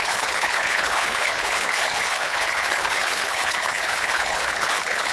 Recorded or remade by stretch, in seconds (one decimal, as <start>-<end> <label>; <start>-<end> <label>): 0.0-5.1 remade